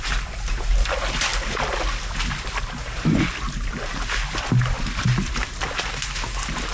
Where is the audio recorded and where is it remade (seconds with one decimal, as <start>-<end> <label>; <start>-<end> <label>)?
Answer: 0.0-6.7 recorded